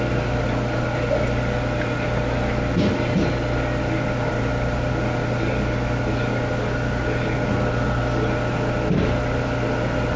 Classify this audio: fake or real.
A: real